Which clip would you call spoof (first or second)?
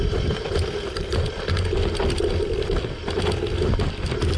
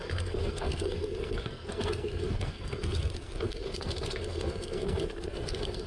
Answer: second